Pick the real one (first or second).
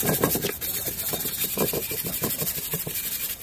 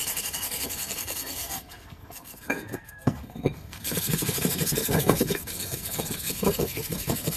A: first